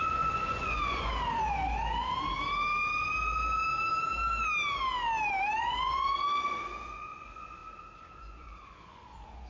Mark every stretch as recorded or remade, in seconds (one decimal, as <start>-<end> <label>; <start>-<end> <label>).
0.0-1.1 remade; 1.1-5.6 recorded; 5.6-7.6 remade; 7.6-8.1 recorded; 8.1-9.5 remade